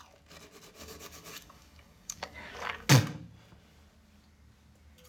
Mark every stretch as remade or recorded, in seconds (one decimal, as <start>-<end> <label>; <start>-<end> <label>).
0.0-0.8 recorded; 0.8-2.9 remade; 2.9-5.1 recorded